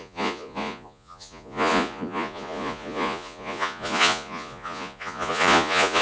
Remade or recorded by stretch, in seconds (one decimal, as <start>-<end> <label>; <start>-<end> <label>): 0.0-6.0 remade